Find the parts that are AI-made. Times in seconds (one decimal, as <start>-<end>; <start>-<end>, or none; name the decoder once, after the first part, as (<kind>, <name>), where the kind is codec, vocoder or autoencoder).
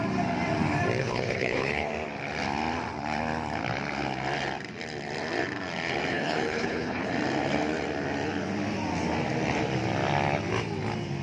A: 1.0-1.9 (codec, HILCodec); 6.1-7.1